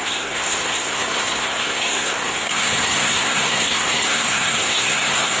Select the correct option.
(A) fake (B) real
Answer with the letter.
A